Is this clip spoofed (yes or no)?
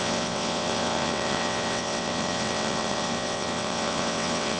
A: yes